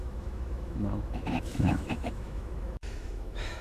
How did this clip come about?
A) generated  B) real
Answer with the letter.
A